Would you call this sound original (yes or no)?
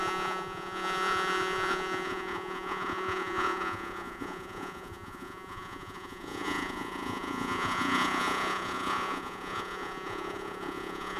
no